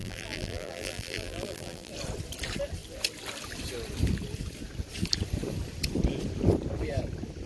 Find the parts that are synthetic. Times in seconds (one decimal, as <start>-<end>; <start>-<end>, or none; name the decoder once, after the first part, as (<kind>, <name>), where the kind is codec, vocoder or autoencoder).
0.0-1.9 (vocoder, BigVGAN v2)

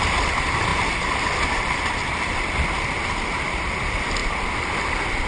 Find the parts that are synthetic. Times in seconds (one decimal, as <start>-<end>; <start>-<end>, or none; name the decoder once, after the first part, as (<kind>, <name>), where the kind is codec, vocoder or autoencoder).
none

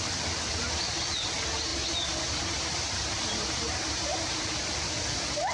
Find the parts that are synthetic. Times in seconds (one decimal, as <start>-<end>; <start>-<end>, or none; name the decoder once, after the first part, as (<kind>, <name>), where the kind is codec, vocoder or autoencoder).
1.7-4.7 (vocoder, BigVGAN v2)

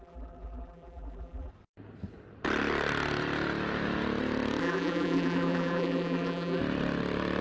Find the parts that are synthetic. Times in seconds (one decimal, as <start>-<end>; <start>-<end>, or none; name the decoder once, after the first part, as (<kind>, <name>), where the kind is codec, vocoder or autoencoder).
0.0-1.5 (vocoder, BigVGAN v2); 4.6-6.6

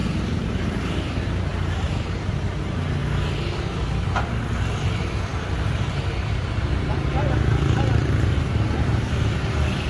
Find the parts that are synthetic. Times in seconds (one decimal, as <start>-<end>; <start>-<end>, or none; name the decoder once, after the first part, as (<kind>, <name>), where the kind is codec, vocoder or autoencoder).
0.0-1.1 (vocoder, BigVGAN v2); 1.5-2.6

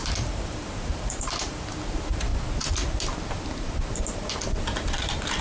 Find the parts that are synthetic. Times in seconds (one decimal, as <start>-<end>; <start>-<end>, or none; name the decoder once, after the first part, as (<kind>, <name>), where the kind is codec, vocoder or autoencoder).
0.0-2.3 (vocoder, BigVGAN v2); 4.3-5.4

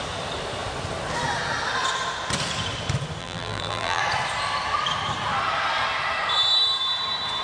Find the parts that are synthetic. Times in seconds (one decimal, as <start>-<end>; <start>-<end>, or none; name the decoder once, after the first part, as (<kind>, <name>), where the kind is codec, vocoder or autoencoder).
3.2-4.0 (vocoder, BigVGAN v2)